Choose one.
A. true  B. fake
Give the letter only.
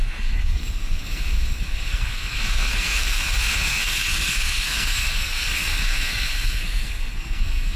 B